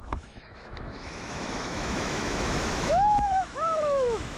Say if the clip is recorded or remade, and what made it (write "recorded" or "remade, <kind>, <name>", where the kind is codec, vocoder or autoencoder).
remade, autoencoder, DAC-VAE